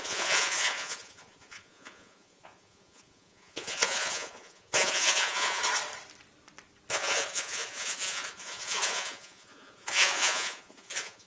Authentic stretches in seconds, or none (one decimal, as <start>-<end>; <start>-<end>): 5.6-6.9